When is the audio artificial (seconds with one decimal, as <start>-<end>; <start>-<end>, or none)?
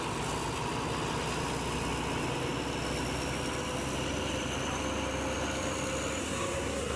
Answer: 6.2-7.0